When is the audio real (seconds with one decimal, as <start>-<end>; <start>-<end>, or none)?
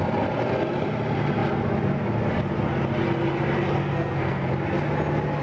0.0-3.8; 4.5-5.4